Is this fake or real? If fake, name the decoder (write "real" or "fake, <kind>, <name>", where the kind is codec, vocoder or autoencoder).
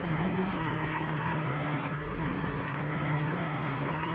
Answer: fake, codec, SNAC